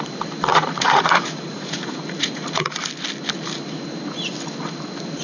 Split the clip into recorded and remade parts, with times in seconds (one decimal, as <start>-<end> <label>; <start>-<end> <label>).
0.0-0.5 recorded; 0.5-2.8 remade; 2.8-5.2 recorded